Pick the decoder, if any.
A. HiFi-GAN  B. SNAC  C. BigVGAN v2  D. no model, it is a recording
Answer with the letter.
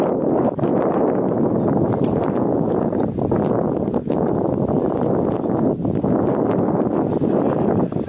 D